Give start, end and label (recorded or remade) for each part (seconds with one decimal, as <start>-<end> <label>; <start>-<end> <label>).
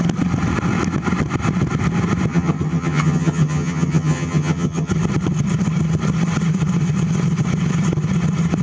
0.0-2.3 recorded; 2.3-4.9 remade; 4.9-8.6 recorded